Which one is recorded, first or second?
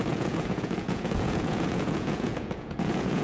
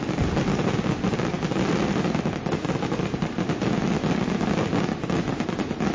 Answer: second